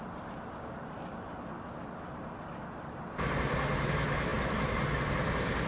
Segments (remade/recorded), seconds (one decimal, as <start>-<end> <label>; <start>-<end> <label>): 0.0-5.7 recorded